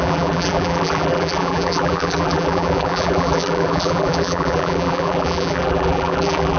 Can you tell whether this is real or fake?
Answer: fake